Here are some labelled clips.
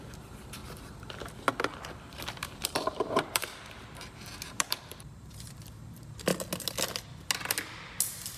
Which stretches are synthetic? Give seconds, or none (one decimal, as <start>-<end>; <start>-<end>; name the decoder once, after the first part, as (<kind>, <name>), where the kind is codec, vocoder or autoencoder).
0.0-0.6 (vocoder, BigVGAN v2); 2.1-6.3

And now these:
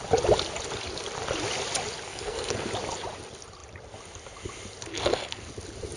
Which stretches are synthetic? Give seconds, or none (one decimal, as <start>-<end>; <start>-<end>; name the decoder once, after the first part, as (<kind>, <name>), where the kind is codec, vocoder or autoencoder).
2.1-2.7 (codec, SNAC); 4.9-5.5

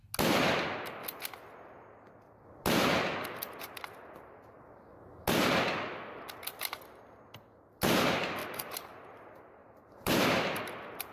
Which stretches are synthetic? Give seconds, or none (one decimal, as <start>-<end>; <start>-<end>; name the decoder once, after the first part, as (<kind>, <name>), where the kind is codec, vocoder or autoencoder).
8.4-9.0 (vocoder, BigVGAN v2); 9.6-10.6

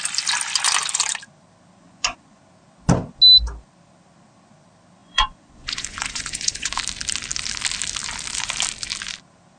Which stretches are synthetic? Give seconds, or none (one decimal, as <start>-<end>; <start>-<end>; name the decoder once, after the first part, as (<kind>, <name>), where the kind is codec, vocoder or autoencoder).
1.8-2.4 (vocoder, Vocos); 5.0-6.8

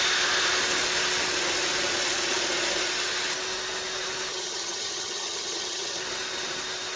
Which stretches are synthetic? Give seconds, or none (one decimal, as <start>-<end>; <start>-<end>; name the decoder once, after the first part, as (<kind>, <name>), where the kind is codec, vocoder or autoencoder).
4.3-6.0 (vocoder, HiFi-GAN)

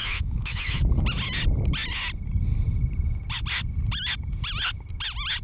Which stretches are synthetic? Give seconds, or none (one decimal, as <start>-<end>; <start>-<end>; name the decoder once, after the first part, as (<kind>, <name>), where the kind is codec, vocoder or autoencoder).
0.0-0.9 (autoencoder, DAC-VAE)

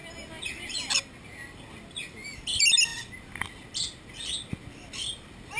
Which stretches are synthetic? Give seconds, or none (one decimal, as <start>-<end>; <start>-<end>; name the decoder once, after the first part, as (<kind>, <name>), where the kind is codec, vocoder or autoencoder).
none